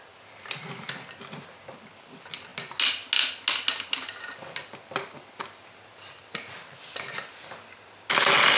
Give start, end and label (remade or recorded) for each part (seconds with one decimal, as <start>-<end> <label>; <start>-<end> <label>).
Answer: 0.0-8.6 recorded